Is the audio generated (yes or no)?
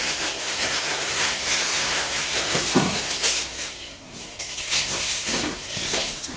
yes